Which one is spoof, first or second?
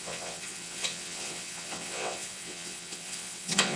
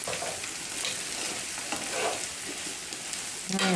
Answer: first